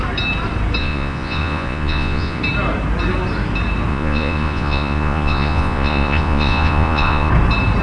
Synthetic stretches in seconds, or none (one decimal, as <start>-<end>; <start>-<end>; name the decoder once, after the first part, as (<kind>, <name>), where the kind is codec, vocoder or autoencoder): 0.8-2.4 (vocoder, Vocos); 3.9-7.3